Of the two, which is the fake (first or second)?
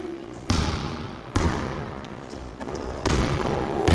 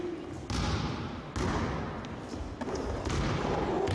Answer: first